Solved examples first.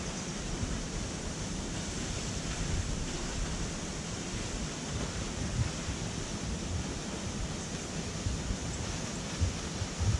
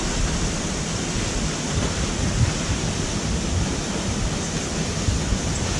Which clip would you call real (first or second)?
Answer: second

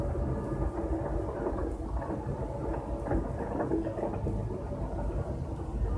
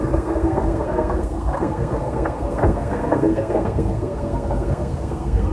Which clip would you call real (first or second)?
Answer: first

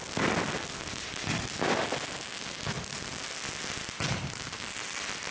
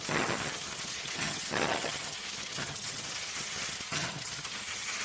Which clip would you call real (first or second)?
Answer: first